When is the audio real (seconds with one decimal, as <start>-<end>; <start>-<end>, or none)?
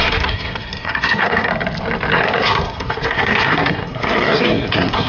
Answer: 1.5-2.1